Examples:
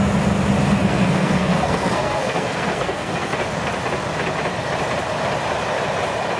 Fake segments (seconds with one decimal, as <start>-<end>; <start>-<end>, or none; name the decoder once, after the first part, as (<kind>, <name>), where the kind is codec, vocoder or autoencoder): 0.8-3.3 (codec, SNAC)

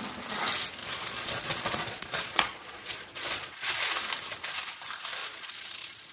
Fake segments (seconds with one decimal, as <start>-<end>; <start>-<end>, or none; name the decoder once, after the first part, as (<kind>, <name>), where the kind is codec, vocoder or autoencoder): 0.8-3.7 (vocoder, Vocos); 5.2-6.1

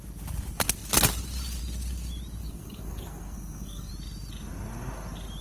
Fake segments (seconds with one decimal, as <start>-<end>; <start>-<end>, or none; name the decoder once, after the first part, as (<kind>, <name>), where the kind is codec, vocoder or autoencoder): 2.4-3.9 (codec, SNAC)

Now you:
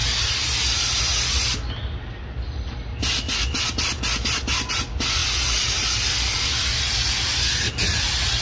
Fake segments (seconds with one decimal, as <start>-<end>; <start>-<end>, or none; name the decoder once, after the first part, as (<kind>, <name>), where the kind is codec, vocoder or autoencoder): none